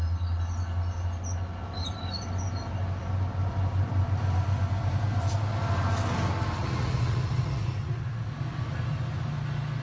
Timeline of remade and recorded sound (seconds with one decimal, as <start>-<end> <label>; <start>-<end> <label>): 0.0-6.6 recorded; 6.6-8.3 remade; 8.3-9.8 recorded

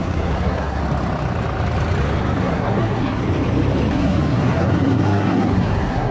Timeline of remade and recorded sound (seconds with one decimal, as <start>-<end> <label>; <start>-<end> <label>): 0.0-0.8 remade; 0.8-2.4 recorded; 2.4-3.2 remade; 3.2-3.9 recorded; 3.9-6.1 remade

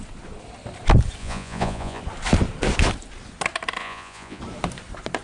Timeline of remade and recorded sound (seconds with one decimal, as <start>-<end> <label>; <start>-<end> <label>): 0.0-1.2 recorded; 1.2-2.0 remade; 2.0-3.8 recorded; 3.8-4.4 remade; 4.4-5.2 recorded

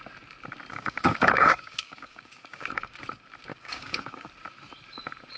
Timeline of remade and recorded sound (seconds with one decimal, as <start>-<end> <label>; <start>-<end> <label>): 0.0-0.7 recorded; 0.7-3.0 remade; 3.0-3.5 recorded; 3.5-4.3 remade; 4.3-5.4 recorded

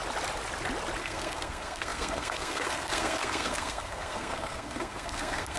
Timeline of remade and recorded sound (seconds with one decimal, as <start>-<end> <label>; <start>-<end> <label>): 0.0-1.0 recorded; 1.0-5.6 remade